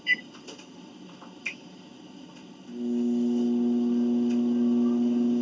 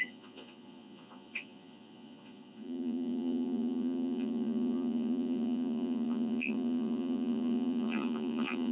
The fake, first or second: second